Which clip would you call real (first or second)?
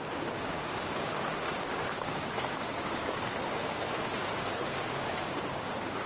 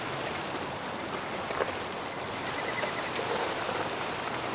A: second